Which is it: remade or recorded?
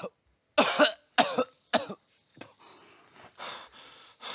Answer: recorded